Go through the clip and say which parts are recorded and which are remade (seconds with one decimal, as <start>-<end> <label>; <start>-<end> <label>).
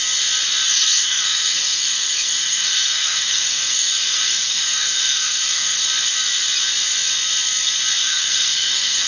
0.0-0.7 recorded; 0.7-5.8 remade; 5.8-8.0 recorded; 8.0-9.1 remade